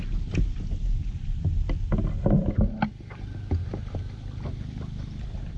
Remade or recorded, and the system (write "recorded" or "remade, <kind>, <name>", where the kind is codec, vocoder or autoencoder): recorded